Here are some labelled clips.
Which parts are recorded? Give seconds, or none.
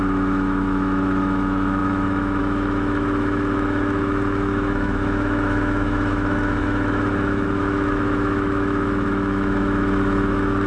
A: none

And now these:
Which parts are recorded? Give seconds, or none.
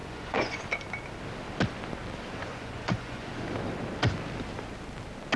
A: 0.6-2.4; 3.3-5.4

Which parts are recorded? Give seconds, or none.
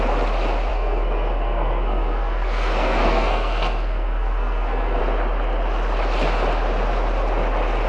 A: 0.0-0.7; 5.0-7.9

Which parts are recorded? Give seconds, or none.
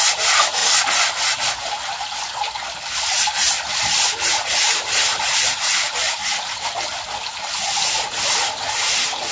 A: 0.6-4.3; 6.2-8.1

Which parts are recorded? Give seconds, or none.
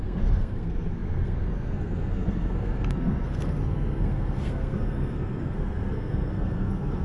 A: none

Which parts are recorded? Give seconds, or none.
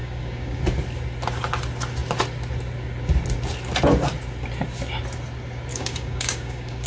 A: 0.6-5.7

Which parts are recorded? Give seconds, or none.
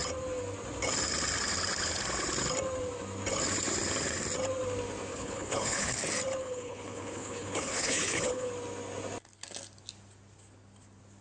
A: 0.0-5.1; 6.0-6.4; 8.5-11.2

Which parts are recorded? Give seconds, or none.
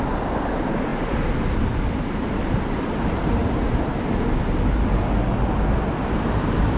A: 3.4-6.0